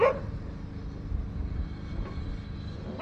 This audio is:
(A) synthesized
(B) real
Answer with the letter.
B